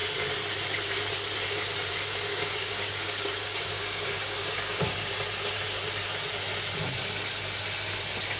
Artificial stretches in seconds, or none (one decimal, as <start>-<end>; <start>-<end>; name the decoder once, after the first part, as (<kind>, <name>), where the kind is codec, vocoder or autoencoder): 2.3-5.1 (codec, DAC)

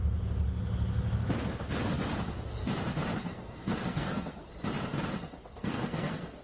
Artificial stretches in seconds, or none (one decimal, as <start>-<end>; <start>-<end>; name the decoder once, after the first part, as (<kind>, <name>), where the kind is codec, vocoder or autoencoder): 3.3-4.5 (codec, SNAC); 5.4-6.4